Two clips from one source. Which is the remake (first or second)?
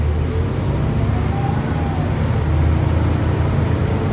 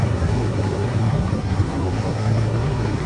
second